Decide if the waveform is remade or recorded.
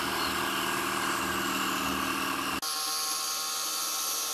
recorded